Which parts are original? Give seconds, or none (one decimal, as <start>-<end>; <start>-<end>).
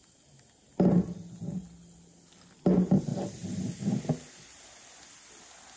0.0-5.8